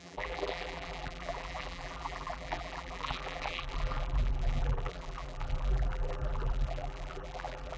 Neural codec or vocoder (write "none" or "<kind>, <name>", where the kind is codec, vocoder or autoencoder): vocoder, BigVGAN v2